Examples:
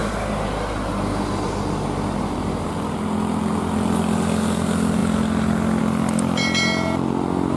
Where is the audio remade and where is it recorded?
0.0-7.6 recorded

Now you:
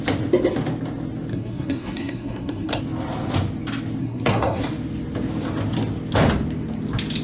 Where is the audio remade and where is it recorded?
0.0-1.3 recorded; 1.3-2.8 remade; 2.8-4.0 recorded; 4.0-4.6 remade; 4.6-7.2 recorded

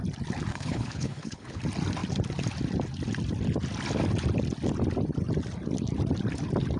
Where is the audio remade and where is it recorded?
0.0-0.5 recorded; 0.5-1.6 remade; 1.6-6.8 recorded

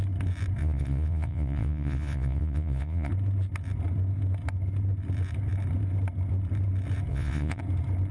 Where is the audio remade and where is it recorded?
0.0-0.6 recorded; 0.6-3.1 remade; 3.1-7.1 recorded; 7.1-7.6 remade; 7.6-8.1 recorded

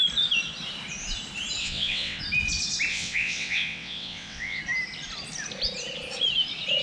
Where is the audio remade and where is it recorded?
0.0-1.6 recorded; 1.6-2.2 remade; 2.2-2.9 recorded; 2.9-4.6 remade; 4.6-6.8 recorded

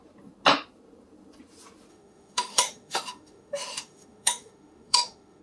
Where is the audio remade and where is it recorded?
0.0-1.9 recorded; 1.9-5.4 remade

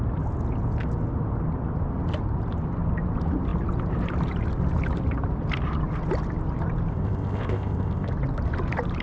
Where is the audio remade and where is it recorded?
0.0-6.9 recorded; 6.9-8.1 remade; 8.1-9.0 recorded